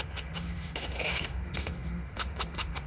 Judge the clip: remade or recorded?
remade